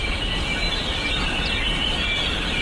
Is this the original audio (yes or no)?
yes